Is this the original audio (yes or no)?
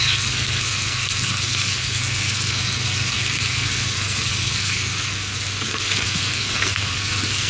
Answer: no